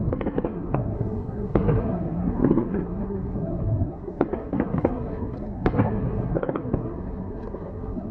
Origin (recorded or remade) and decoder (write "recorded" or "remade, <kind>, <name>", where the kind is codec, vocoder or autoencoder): remade, codec, SNAC